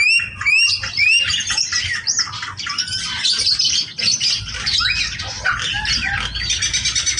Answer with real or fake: real